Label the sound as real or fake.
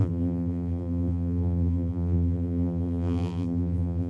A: fake